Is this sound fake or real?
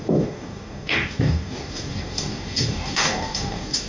fake